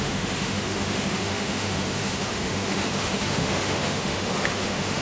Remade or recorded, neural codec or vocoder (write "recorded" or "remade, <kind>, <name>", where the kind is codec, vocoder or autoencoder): remade, autoencoder, DAC-VAE